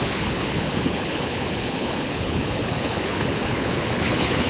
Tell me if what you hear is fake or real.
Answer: fake